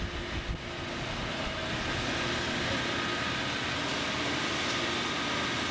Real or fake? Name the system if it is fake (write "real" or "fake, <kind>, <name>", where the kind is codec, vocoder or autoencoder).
real